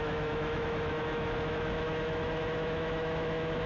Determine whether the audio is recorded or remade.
remade